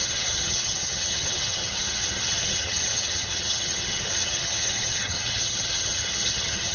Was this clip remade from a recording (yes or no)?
yes